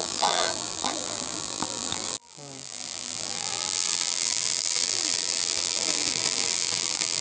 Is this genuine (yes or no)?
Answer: no